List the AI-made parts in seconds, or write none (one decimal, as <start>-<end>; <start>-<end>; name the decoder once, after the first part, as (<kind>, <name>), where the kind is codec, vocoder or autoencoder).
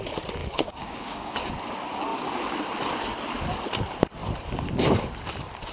0.4-1.5 (codec, DAC)